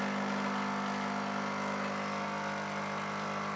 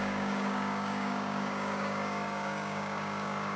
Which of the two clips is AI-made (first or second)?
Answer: second